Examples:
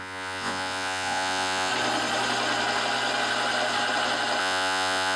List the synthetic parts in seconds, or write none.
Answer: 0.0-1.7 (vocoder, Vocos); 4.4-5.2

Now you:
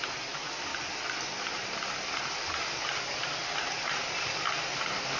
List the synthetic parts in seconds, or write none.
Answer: none

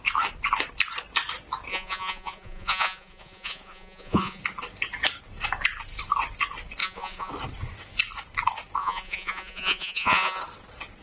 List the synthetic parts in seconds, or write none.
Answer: 1.7-4.4 (vocoder, Vocos); 6.8-7.3; 8.8-10.4

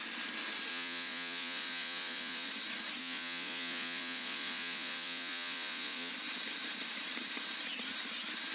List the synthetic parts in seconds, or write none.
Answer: 0.7-2.5 (vocoder, Vocos); 3.0-6.1